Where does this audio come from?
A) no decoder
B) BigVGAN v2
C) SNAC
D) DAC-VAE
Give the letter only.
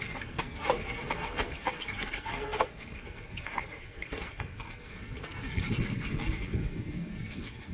C